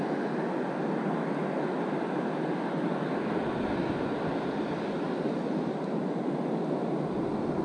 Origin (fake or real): real